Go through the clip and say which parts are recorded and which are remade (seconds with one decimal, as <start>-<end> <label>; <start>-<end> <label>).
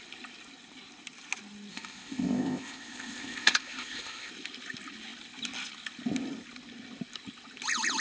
0.0-1.7 recorded; 1.7-4.3 remade; 4.3-8.0 recorded